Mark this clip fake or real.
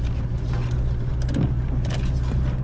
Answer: real